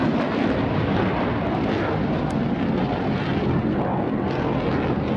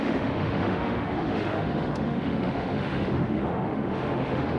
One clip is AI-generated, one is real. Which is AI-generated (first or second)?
second